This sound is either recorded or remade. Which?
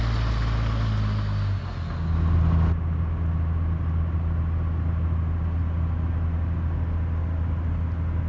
recorded